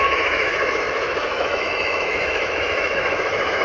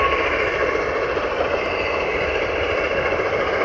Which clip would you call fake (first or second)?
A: first